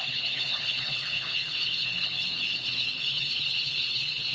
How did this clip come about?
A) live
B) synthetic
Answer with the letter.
B